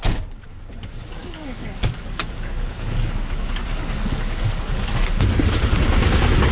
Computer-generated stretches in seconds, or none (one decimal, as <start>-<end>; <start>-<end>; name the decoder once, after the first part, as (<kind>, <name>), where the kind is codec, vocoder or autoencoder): 1.2-5.1 (codec, DAC)